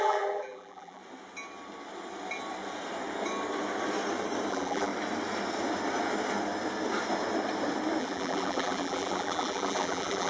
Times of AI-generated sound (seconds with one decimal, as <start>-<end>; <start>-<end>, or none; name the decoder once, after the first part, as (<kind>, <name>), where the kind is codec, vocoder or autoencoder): 0.0-1.0 (vocoder, BigVGAN v2); 4.5-4.9; 8.0-10.3